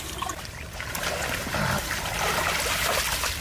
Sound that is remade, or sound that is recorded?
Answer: recorded